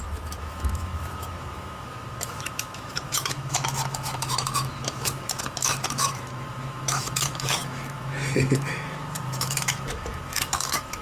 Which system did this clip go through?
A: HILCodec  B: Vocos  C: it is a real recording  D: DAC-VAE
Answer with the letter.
D